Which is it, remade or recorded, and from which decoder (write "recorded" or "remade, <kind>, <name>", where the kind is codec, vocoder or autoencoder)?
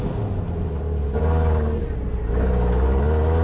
recorded